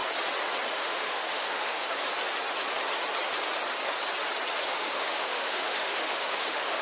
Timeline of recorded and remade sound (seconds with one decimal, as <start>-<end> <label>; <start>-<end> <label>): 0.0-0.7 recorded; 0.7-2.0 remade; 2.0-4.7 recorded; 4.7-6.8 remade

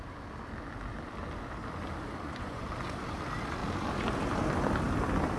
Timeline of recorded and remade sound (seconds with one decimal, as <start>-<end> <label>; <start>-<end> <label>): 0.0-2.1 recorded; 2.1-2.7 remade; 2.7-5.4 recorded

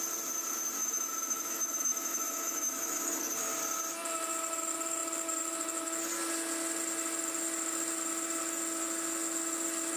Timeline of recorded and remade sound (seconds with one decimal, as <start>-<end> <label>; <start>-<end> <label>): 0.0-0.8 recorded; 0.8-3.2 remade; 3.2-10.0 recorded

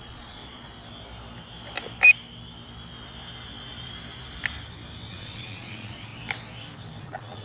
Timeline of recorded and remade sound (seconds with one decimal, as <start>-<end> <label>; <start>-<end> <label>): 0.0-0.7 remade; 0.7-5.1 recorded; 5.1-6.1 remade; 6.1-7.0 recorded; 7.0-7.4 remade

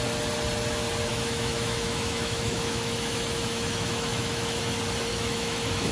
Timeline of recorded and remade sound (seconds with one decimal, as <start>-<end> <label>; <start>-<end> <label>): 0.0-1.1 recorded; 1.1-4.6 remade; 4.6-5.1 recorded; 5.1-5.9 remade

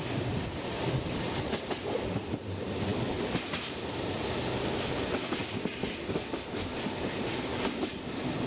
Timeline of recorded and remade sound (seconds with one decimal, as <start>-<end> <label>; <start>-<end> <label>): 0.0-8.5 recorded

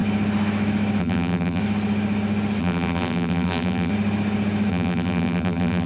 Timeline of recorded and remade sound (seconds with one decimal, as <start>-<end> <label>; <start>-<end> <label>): 0.0-1.0 recorded; 1.0-1.6 remade; 1.6-2.6 recorded; 2.6-3.9 remade; 3.9-4.7 recorded; 4.7-5.9 remade